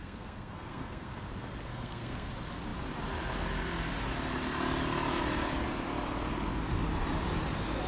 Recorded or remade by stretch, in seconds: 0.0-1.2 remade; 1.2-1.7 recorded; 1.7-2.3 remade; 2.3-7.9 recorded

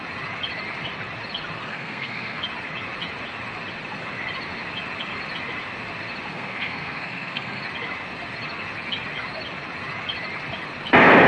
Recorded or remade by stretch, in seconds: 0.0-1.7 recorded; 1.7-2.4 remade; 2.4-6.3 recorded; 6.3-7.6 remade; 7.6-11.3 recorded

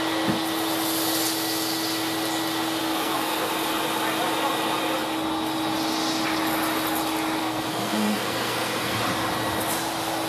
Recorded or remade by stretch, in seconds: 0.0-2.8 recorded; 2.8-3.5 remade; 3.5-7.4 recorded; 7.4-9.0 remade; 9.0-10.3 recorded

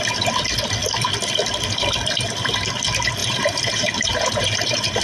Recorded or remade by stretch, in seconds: 0.0-3.2 recorded; 3.2-5.0 remade

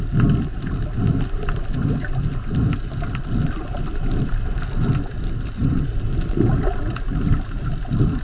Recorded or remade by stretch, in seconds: 0.0-8.2 recorded